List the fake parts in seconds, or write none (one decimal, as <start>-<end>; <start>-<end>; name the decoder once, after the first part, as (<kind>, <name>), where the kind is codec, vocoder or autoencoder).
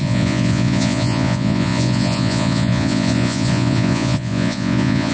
0.0-5.1 (vocoder, Vocos)